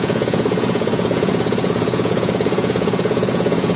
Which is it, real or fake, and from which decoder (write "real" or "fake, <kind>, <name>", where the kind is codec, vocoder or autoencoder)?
fake, vocoder, Vocos